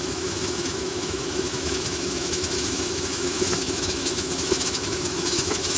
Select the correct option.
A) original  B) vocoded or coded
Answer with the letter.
B